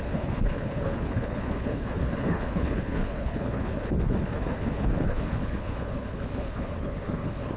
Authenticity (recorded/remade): remade